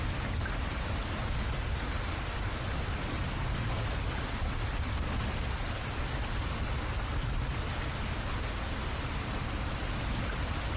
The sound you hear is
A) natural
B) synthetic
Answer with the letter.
A